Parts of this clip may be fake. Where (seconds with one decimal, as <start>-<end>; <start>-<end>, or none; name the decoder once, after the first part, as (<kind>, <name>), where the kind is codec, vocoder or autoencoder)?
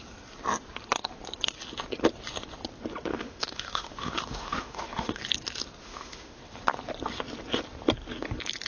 3.1-5.2 (autoencoder, DAC-VAE); 5.8-6.4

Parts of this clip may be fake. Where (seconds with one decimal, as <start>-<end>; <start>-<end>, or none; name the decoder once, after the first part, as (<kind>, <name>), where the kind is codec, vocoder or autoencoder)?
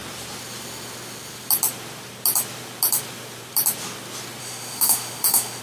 4.4-5.6 (autoencoder, DAC-VAE)